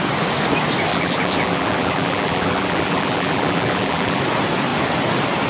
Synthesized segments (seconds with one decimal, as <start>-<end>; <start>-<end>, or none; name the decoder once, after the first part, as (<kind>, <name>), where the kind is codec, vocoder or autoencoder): 0.9-4.2 (vocoder, BigVGAN v2)